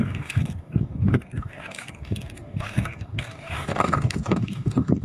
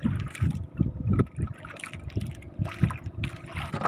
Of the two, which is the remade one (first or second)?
first